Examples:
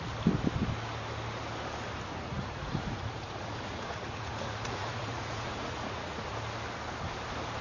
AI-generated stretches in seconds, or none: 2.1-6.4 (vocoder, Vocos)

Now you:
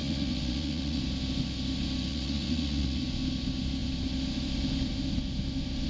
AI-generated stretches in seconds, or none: 0.0-1.0 (vocoder, Vocos); 2.1-3.0

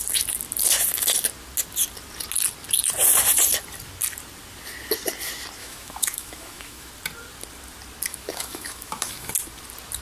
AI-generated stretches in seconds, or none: 5.6-6.9 (autoencoder, DAC-VAE); 8.1-9.3

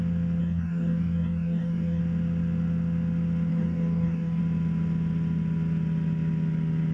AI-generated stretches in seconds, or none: 0.4-2.0 (codec, DAC); 3.5-4.4

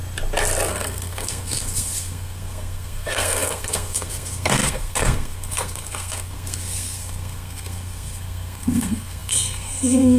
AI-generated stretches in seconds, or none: 0.7-10.2 (codec, SNAC)

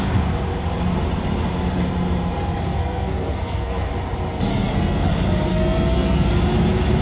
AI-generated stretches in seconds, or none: 2.7-3.9 (codec, SNAC); 4.5-5.1; 5.5-6.3

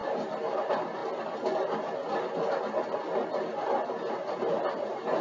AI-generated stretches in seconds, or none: 0.6-1.0 (vocoder, BigVGAN v2); 4.1-5.2